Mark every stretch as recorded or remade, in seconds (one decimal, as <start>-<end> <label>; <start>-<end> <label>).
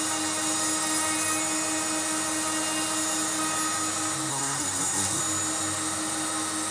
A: 0.0-4.3 recorded; 4.3-5.2 remade; 5.2-6.7 recorded